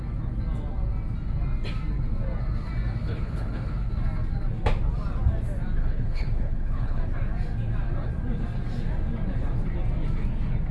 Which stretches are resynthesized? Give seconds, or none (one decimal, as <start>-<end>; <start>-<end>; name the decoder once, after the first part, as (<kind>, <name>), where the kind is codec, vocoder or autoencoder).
3.0-3.9 (codec, HILCodec); 5.8-7.0